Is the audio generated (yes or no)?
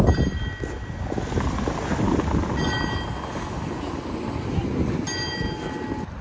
no